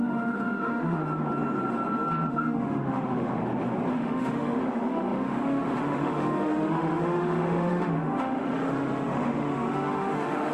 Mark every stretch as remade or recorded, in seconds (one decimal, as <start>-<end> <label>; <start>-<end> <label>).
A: 0.0-1.0 remade; 1.0-2.3 recorded; 2.3-3.4 remade; 3.4-3.9 recorded; 3.9-10.5 remade

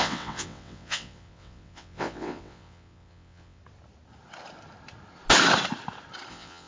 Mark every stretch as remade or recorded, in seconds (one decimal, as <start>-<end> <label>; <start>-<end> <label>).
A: 0.0-3.6 remade; 3.6-6.3 recorded; 6.3-6.7 remade